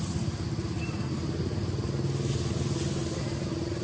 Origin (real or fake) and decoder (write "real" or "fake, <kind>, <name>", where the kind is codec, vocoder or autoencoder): real